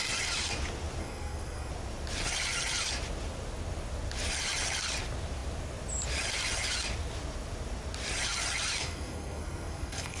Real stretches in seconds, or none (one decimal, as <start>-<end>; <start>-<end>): 0.0-1.0; 1.7-8.8